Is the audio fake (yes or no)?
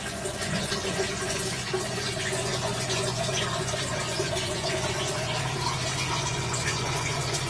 yes